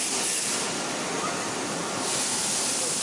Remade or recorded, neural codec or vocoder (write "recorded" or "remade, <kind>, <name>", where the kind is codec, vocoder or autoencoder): recorded